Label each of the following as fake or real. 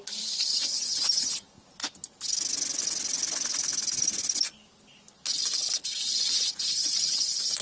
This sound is real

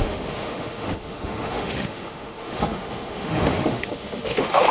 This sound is fake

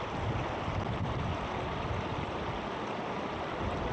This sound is real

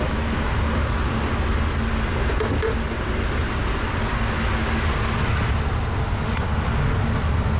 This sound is real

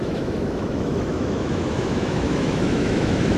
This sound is fake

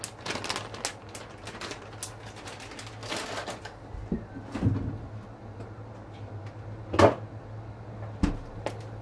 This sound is real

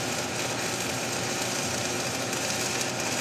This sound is real